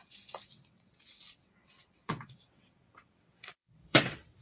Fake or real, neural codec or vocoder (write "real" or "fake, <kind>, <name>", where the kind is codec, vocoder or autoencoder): fake, vocoder, WaveNeXt